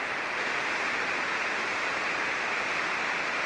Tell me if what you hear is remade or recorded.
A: recorded